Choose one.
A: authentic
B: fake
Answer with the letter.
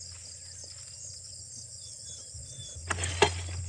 A